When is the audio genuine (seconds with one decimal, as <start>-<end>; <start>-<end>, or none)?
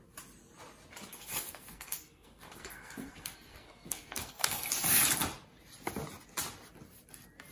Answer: 0.0-1.1; 4.7-7.5